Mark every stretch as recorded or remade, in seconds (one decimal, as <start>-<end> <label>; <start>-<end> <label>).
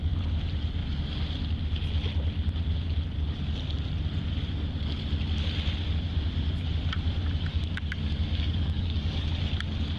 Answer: 0.0-7.5 recorded; 7.5-9.3 remade; 9.3-10.0 recorded